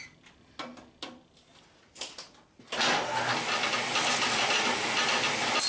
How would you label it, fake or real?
real